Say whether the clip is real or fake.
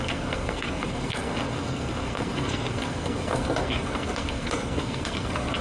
fake